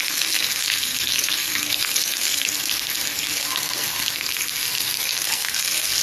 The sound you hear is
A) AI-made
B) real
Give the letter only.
A